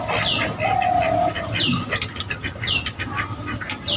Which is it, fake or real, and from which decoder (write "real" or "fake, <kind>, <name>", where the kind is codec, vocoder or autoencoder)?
real